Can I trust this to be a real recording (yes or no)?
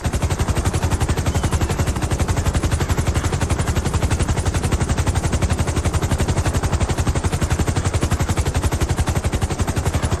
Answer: yes